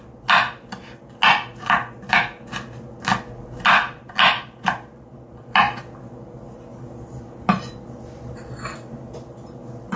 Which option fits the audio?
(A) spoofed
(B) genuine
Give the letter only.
B